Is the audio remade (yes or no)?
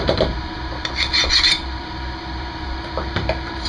yes